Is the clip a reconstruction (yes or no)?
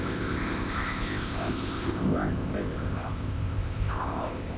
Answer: yes